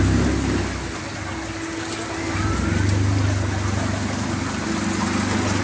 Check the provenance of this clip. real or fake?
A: real